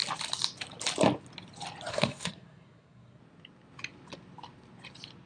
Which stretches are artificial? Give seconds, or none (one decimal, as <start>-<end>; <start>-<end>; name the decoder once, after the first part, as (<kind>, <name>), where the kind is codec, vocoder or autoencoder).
1.9-3.2 (codec, SNAC)